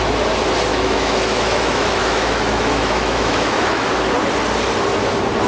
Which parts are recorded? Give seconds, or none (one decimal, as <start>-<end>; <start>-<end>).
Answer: 0.0-0.7; 3.9-5.5